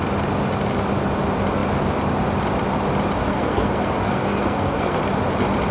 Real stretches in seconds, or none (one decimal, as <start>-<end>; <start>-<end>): 0.0-3.3; 5.0-5.7